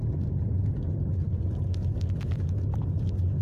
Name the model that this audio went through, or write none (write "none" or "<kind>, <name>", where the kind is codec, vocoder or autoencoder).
none